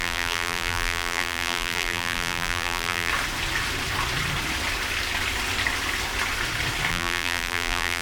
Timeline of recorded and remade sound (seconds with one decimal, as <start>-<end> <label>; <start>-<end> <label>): 0.0-3.1 remade; 3.1-6.9 recorded; 6.9-8.0 remade